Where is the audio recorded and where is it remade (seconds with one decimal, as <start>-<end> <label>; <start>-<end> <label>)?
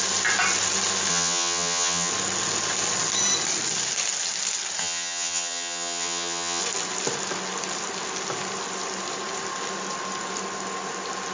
0.0-1.1 recorded; 1.1-2.1 remade; 2.1-4.8 recorded; 4.8-6.6 remade; 6.6-11.3 recorded